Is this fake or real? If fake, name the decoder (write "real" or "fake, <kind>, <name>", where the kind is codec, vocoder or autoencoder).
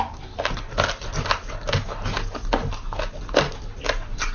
real